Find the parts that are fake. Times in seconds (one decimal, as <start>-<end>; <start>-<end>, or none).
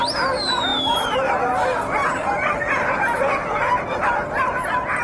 0.7-1.5; 2.0-5.0